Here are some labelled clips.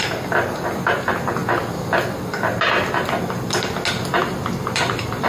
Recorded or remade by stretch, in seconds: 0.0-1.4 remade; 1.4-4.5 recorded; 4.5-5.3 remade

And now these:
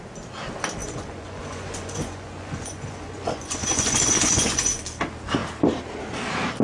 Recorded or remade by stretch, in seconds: 0.0-0.8 recorded; 0.8-4.8 remade; 4.8-6.6 recorded

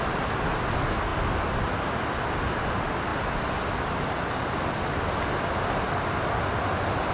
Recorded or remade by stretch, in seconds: 0.0-7.1 recorded